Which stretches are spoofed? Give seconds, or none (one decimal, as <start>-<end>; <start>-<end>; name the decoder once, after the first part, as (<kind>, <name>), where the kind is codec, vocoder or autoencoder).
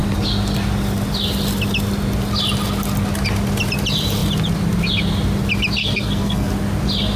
5.8-6.5 (codec, SNAC)